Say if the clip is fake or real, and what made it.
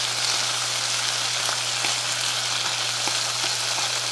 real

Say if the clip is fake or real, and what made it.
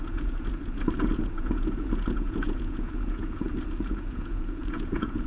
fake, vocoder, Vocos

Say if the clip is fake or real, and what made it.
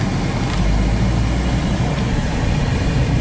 real